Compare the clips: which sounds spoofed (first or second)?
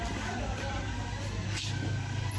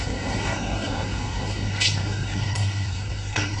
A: second